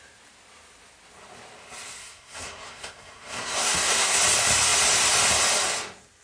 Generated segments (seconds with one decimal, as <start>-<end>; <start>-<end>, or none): 2.0-4.2